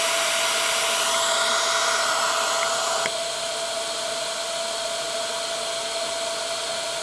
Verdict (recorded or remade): recorded